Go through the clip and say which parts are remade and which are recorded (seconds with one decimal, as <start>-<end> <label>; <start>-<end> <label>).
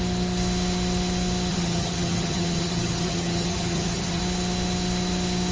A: 0.0-1.5 recorded; 1.5-4.2 remade; 4.2-5.5 recorded